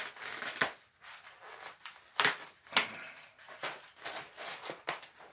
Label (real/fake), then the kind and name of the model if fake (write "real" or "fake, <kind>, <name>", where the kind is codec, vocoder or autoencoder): real